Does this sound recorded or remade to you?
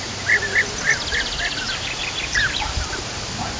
recorded